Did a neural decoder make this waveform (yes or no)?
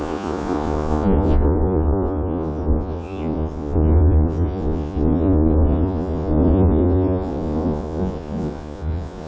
yes